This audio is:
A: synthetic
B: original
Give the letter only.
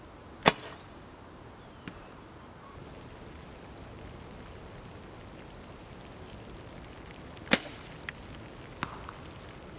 B